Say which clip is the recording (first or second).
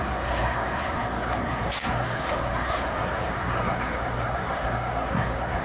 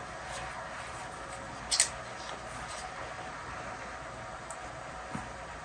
second